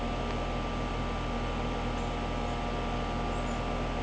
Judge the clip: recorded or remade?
recorded